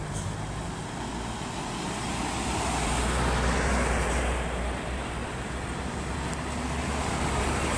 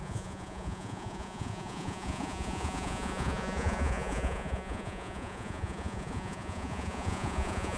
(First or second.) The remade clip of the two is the second